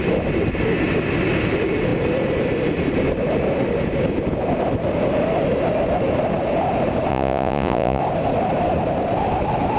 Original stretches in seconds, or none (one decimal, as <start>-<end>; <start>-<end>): 0.0-7.1; 8.0-9.8